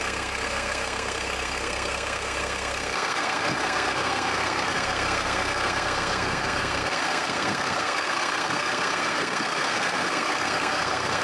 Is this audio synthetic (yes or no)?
yes